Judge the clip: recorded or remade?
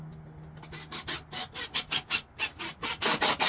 recorded